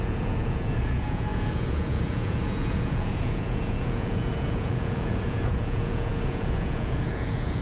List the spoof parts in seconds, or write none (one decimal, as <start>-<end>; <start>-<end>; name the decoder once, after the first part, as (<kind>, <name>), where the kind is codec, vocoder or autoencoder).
0.0-7.6 (vocoder, Vocos)